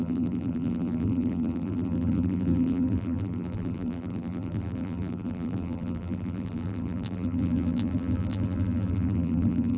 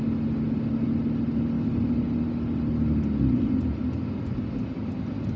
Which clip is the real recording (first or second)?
second